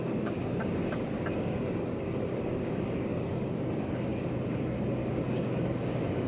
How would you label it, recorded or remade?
remade